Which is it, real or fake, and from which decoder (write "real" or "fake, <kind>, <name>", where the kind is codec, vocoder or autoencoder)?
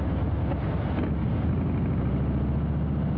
real